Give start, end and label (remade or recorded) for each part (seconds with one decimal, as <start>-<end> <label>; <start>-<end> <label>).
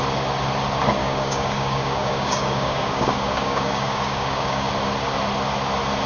0.0-1.0 recorded; 1.0-4.7 remade; 4.7-6.1 recorded